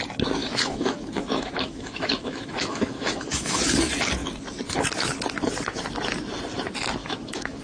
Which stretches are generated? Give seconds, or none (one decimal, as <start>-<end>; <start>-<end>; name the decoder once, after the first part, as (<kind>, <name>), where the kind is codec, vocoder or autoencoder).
0.4-3.6 (autoencoder, DAC-VAE); 7.0-7.6

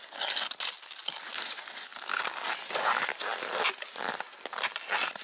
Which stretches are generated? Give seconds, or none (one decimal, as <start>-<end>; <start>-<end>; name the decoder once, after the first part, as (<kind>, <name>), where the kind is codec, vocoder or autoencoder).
none

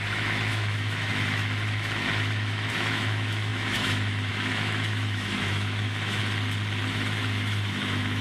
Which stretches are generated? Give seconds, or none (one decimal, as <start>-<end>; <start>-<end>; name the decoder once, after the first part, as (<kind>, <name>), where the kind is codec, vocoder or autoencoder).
0.0-6.2 (autoencoder, DAC-VAE); 6.9-8.2

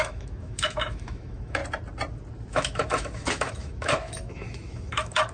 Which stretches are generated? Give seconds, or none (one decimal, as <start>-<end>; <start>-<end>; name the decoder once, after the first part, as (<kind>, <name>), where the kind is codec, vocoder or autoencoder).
0.0-1.6 (autoencoder, DAC-VAE); 2.5-5.3

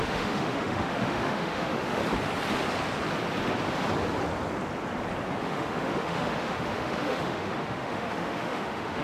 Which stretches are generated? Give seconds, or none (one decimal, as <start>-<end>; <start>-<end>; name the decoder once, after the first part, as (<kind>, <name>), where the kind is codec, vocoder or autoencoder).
0.0-2.0 (autoencoder, DAC-VAE); 5.4-9.0

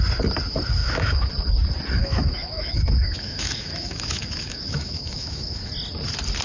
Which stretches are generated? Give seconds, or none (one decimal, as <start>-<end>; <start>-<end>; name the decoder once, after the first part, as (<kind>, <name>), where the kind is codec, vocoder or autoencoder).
0.8-1.3 (autoencoder, DAC-VAE); 2.0-5.7